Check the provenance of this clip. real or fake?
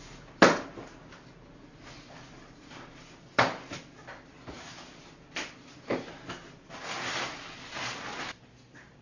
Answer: real